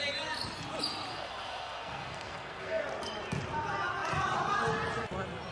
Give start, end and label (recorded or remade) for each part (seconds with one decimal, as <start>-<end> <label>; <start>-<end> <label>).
0.0-1.1 recorded; 1.1-2.8 remade; 2.8-5.5 recorded